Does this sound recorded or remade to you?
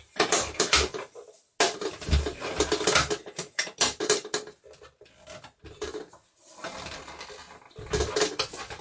recorded